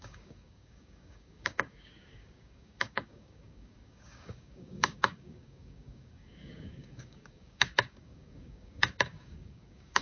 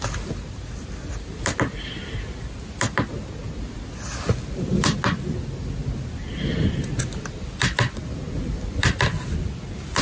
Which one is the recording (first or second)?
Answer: second